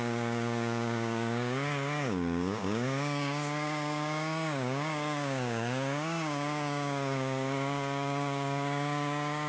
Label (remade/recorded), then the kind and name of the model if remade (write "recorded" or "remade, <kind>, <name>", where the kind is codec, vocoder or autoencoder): remade, codec, DAC